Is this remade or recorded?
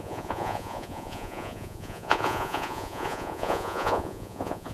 remade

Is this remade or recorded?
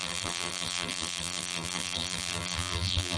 remade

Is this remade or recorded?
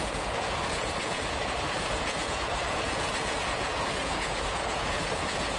remade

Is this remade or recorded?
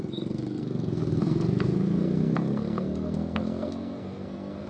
remade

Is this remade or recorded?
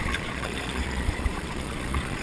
remade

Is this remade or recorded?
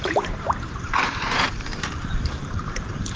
remade